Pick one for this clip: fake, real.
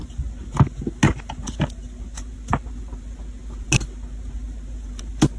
real